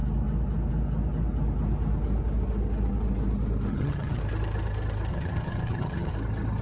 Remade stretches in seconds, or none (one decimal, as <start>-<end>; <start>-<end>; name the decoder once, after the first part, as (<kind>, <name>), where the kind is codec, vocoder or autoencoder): 3.7-4.2 (vocoder, HiFi-GAN); 5.1-6.1